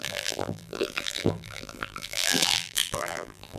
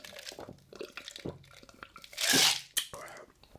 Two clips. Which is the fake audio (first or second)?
first